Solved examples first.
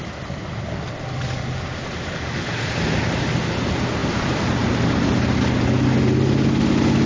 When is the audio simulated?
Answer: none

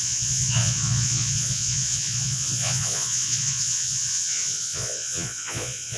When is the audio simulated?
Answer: 0.0-6.0

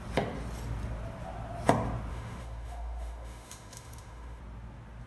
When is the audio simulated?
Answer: 2.1-4.4